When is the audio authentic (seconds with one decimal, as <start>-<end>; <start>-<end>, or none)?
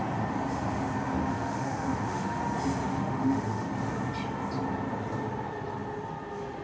0.0-1.2; 2.4-2.9; 3.7-6.6